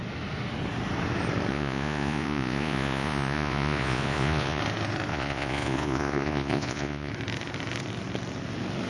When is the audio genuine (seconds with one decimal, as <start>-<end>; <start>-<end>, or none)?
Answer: 0.0-1.5; 4.6-5.1; 7.1-8.9